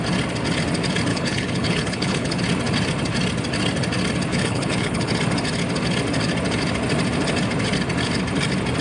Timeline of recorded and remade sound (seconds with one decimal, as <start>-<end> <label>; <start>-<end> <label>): 0.0-1.1 recorded; 1.1-2.4 remade; 2.4-4.3 recorded; 4.3-5.1 remade; 5.1-8.8 recorded